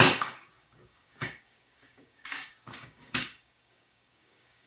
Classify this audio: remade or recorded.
remade